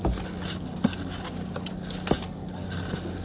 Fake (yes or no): no